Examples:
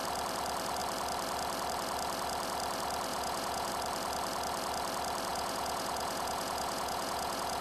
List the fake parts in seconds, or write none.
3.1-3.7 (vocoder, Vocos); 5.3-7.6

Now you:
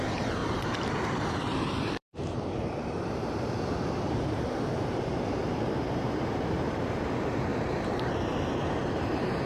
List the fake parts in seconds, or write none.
0.0-0.4 (vocoder, BigVGAN v2); 1.2-9.5

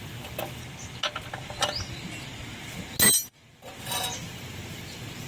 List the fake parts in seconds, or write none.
0.0-0.6 (vocoder, BigVGAN v2); 3.8-5.3

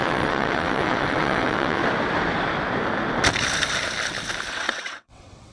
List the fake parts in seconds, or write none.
0.0-1.8 (vocoder, WaveNeXt); 4.5-5.5

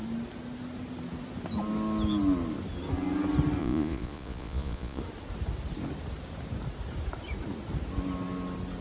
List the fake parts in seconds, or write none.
3.6-5.0 (vocoder, Vocos)